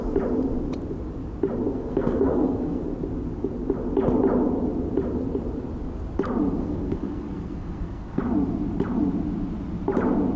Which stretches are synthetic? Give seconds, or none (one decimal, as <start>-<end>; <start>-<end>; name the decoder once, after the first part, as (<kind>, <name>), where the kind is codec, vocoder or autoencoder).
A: 1.7-2.8 (codec, SNAC); 6.6-8.2